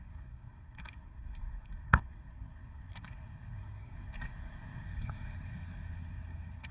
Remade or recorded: remade